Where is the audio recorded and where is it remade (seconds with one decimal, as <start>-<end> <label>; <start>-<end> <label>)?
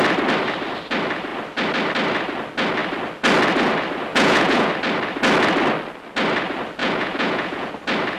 0.0-4.1 recorded; 4.1-4.7 remade; 4.7-6.8 recorded; 6.8-7.7 remade; 7.7-8.2 recorded